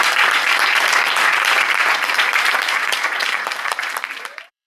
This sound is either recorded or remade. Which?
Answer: remade